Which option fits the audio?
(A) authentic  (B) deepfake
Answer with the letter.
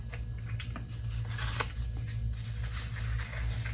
A